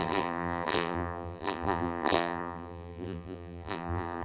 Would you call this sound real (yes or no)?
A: no